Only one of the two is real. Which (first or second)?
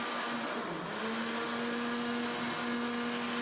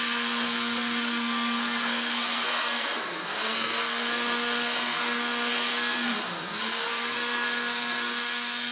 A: first